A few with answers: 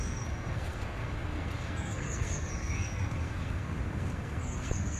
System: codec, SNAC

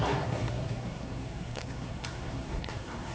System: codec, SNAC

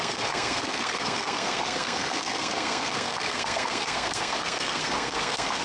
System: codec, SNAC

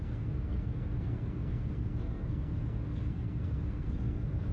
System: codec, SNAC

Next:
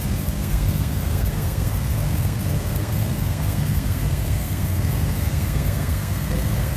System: codec, SNAC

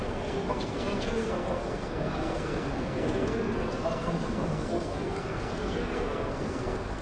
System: codec, SNAC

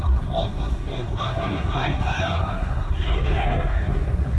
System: codec, SNAC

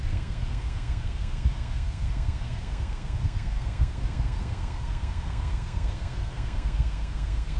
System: codec, SNAC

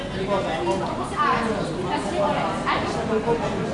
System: none